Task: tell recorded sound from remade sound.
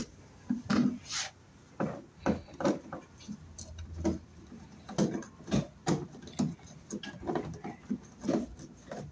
recorded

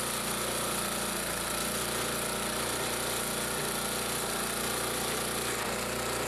recorded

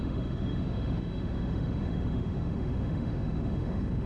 remade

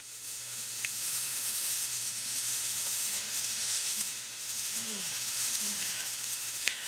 remade